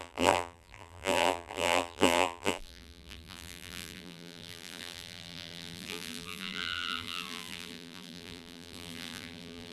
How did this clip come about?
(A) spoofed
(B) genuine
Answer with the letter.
A